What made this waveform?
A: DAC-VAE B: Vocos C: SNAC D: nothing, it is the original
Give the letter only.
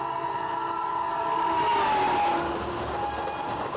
D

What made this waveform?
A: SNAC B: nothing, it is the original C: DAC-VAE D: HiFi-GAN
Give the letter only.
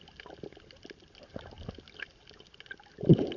B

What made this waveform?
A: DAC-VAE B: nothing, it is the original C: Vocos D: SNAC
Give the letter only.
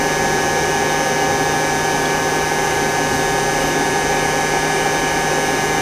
B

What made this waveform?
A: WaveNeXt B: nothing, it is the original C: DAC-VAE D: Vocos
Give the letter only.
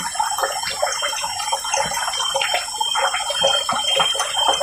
B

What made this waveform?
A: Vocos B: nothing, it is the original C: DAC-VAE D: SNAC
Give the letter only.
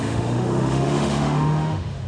C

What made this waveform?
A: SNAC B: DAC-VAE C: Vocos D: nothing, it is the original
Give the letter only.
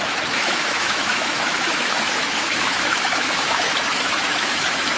B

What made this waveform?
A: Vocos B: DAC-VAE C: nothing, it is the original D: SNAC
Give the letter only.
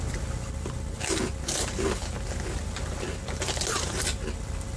C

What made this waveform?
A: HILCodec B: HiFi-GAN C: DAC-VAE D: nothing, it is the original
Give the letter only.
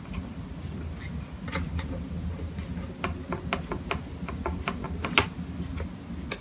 D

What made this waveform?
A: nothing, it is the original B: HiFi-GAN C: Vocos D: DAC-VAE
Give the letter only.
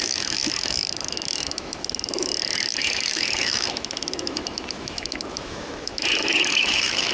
D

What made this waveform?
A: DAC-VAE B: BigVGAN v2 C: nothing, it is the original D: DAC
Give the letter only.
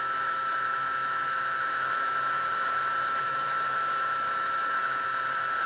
A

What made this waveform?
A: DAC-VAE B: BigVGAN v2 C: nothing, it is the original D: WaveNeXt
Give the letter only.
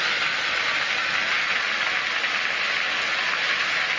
C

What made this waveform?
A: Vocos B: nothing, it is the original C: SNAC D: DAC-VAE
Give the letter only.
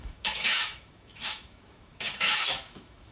D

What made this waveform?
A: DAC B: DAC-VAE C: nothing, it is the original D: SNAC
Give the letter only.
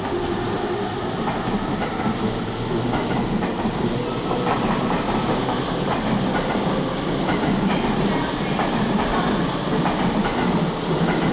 C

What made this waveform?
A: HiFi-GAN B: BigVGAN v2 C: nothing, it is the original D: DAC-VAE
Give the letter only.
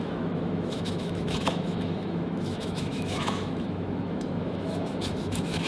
D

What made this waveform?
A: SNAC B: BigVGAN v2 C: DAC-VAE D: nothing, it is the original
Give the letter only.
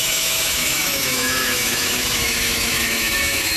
C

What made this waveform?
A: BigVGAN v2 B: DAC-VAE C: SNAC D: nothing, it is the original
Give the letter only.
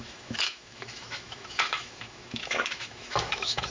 B